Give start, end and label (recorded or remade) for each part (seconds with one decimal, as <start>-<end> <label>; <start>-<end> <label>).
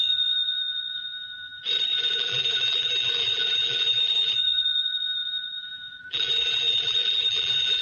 0.0-1.6 remade; 1.6-2.1 recorded; 2.1-7.8 remade